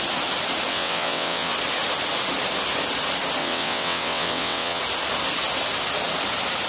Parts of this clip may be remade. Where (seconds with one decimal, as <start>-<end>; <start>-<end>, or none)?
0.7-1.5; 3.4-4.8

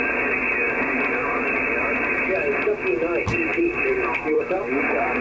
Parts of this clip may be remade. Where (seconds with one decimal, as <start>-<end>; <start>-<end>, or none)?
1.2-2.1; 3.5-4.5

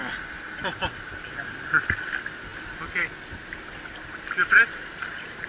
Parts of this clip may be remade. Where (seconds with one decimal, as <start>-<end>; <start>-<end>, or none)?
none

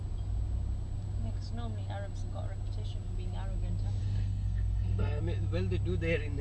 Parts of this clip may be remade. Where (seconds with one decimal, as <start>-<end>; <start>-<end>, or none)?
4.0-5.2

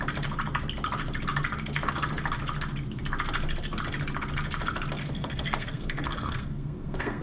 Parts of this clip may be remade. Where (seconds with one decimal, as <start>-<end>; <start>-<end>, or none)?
5.0-7.2

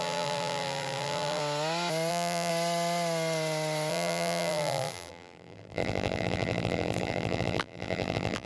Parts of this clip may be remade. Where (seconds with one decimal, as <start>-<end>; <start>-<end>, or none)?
0.0-1.4; 2.1-2.5; 3.9-8.5

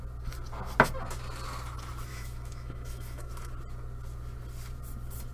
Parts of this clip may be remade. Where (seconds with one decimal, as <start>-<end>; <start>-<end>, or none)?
2.1-3.3

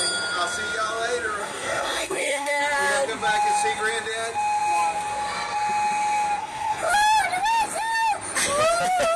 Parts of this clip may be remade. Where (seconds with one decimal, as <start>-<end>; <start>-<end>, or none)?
1.4-2.6; 6.4-6.9